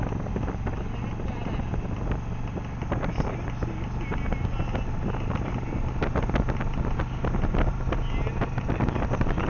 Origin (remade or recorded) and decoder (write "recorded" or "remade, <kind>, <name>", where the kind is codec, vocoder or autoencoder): recorded